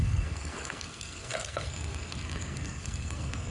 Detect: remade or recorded remade